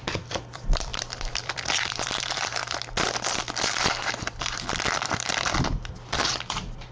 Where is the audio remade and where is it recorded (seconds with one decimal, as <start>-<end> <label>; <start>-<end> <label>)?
0.0-2.6 remade; 2.6-4.2 recorded; 4.2-6.9 remade